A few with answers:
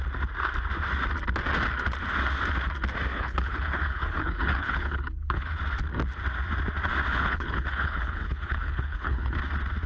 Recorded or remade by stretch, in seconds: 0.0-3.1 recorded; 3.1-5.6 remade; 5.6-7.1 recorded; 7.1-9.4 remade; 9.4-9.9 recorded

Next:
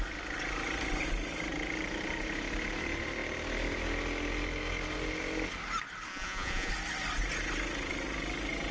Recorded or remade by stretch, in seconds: 0.0-6.1 recorded; 6.1-6.7 remade; 6.7-8.7 recorded

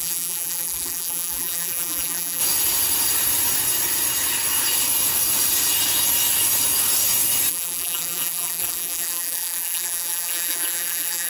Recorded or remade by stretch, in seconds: 0.0-2.4 remade; 2.4-7.5 recorded; 7.5-11.3 remade

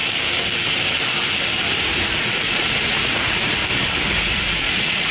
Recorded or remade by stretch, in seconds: 0.0-1.8 recorded; 1.8-3.6 remade; 3.6-4.1 recorded; 4.1-5.1 remade

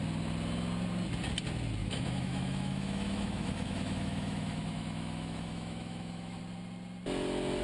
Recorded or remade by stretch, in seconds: 0.0-1.8 recorded; 1.8-6.4 remade; 6.4-7.6 recorded

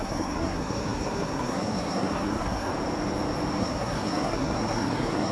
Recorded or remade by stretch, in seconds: 0.0-2.7 remade; 2.7-3.6 recorded; 3.6-5.3 remade

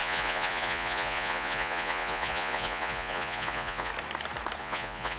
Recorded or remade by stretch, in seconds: 0.0-3.9 remade; 3.9-4.6 recorded; 4.6-5.2 remade

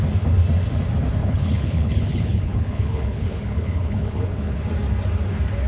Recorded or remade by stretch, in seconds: 0.0-1.2 recorded; 1.2-4.6 remade; 4.6-5.7 recorded